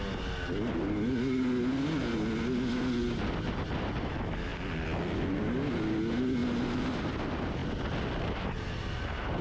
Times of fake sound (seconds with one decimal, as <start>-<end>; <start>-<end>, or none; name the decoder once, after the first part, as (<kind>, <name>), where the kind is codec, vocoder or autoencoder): none